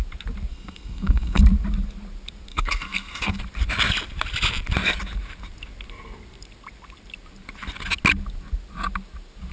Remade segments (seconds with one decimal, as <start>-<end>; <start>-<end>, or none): 0.5-1.4; 2.5-3.4